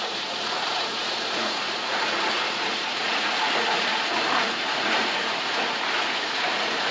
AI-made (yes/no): yes